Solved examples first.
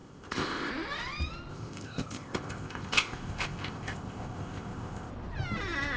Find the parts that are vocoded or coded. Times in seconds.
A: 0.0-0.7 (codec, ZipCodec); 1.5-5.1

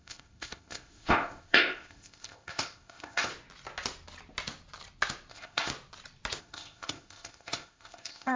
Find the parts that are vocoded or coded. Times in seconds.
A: 0.0-3.3 (codec, ZipCodec); 5.3-5.7; 6.4-8.4

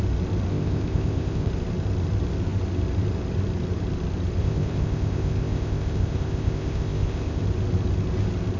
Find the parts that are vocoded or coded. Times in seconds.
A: 0.5-1.5 (codec, ZipCodec); 4.4-7.4

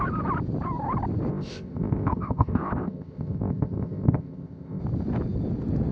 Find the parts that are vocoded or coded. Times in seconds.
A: 1.3-4.8 (codec, ZipCodec)

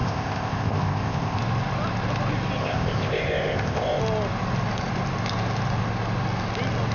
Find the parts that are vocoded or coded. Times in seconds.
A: 0.0-1.4 (codec, ZipCodec); 2.6-4.0

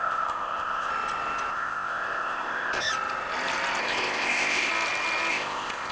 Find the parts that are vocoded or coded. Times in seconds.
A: 0.0-0.9 (codec, ZipCodec); 1.5-2.9; 3.8-4.7; 5.3-5.9

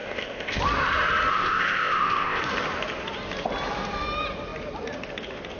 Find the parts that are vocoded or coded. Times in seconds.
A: 0.0-0.6 (codec, ZipCodec); 1.3-2.4

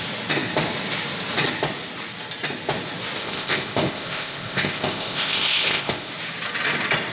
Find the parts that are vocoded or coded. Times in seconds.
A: 3.2-6.1 (codec, ZipCodec)